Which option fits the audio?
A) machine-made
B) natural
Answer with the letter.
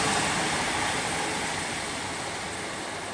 B